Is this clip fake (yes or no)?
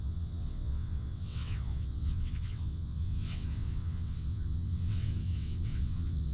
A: yes